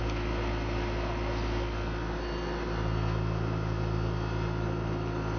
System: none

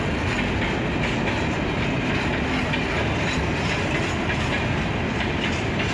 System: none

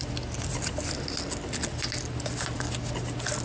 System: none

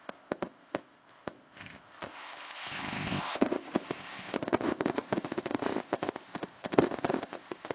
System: codec, ZipCodec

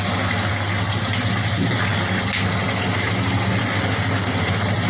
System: none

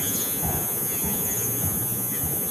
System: vocoder, Vocos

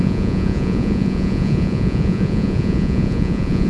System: vocoder, Vocos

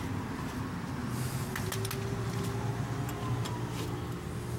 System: none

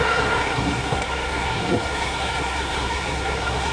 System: codec, SNAC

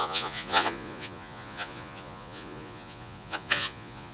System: vocoder, Vocos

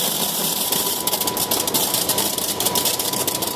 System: vocoder, BigVGAN v2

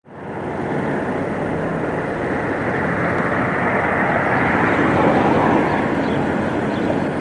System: none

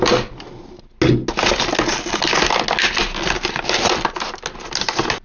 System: none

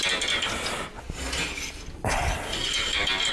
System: none